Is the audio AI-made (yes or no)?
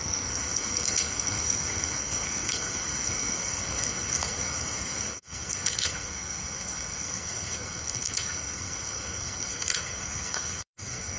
yes